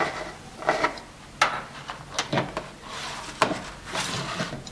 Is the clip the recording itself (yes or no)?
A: yes